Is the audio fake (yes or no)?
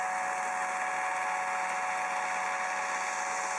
no